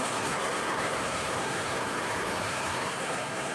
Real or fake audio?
fake